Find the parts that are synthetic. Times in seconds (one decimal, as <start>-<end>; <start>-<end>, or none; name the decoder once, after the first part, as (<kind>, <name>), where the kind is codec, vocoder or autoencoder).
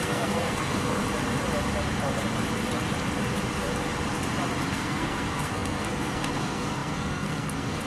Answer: 0.0-1.0 (codec, SNAC); 4.7-7.9